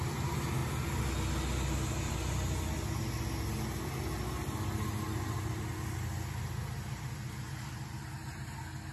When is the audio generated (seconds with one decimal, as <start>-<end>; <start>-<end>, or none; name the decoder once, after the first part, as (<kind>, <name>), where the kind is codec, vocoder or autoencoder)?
none